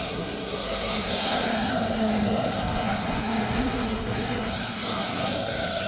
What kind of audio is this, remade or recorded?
remade